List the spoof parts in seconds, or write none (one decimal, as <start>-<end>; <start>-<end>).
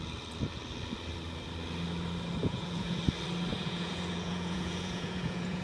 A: 2.4-3.0; 3.5-5.6